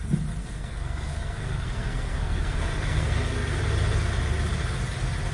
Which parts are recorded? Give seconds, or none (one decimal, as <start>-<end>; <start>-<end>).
0.0-0.4; 3.6-5.3